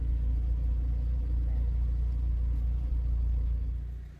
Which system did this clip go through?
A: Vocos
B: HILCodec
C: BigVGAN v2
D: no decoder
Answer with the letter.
D